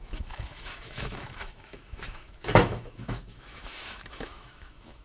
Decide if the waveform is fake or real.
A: fake